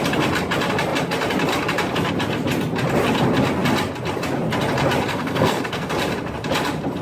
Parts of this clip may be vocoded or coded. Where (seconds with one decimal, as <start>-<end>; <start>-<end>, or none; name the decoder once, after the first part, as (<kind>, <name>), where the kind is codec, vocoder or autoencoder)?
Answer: 5.1-5.9 (codec, SNAC)